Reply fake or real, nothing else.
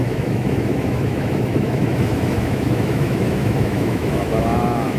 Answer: fake